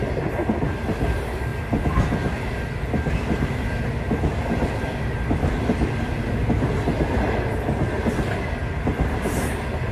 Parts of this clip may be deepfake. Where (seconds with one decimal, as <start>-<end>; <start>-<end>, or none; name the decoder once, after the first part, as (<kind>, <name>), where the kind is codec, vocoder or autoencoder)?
none